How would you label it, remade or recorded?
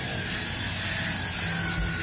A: recorded